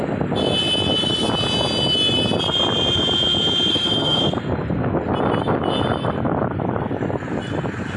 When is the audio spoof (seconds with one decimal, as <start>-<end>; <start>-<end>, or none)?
3.7-4.2

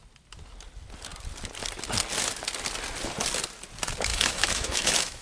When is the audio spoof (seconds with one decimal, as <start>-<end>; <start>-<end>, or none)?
4.1-5.2

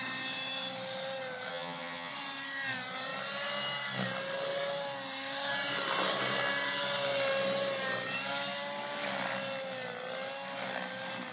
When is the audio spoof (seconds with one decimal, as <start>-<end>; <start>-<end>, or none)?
1.5-2.1

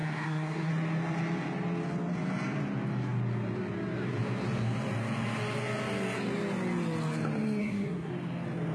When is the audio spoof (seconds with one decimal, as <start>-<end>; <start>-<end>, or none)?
0.0-0.7; 7.6-8.1

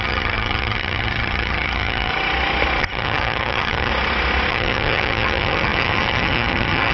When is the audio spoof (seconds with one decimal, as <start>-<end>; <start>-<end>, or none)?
0.0-2.1; 2.8-3.9; 4.5-6.9